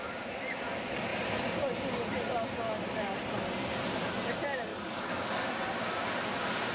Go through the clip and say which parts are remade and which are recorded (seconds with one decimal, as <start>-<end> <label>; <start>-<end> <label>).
0.0-4.7 recorded; 4.7-5.5 remade; 5.5-6.7 recorded